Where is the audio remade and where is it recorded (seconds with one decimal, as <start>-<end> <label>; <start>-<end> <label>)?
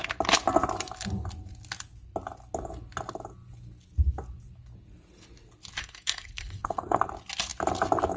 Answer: 0.0-5.8 recorded; 5.8-7.0 remade; 7.0-8.2 recorded